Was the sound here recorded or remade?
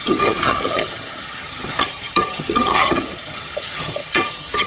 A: remade